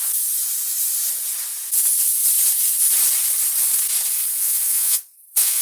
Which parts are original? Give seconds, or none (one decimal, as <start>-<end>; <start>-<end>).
0.0-4.3

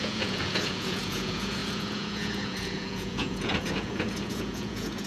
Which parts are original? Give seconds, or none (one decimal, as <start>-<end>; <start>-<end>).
none